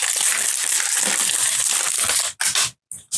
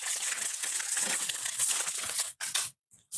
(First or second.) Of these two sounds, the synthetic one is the second